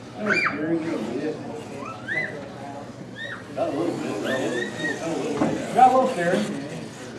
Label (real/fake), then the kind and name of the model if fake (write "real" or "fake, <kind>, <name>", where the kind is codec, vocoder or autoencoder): real